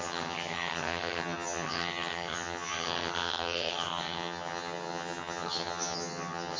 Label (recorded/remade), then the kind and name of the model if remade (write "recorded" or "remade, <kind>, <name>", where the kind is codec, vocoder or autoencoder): remade, vocoder, HiFi-GAN